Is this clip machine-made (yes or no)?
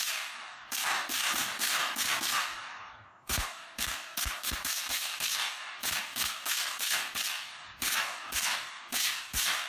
yes